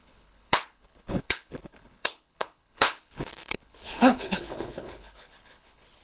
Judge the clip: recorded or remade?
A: remade